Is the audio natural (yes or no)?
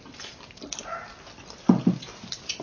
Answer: yes